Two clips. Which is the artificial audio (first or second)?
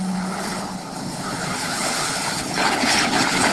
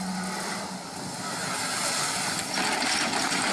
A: first